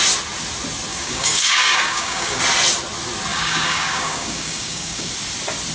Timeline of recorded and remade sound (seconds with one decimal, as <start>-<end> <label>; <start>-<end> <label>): 0.0-0.9 recorded; 0.9-2.4 remade; 2.4-3.3 recorded; 3.3-5.1 remade; 5.1-5.7 recorded